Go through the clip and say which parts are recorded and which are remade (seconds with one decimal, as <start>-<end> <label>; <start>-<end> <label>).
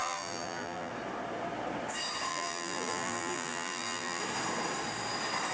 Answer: 0.0-0.9 remade; 0.9-2.3 recorded; 2.3-4.2 remade; 4.2-5.5 recorded